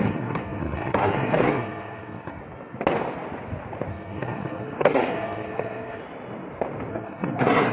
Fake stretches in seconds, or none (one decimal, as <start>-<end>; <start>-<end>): 0.0-2.4; 3.9-6.0; 6.9-7.7